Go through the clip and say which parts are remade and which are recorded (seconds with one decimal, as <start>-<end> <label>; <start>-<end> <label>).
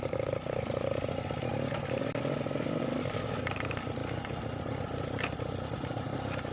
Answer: 0.0-6.5 recorded